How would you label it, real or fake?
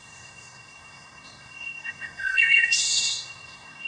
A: fake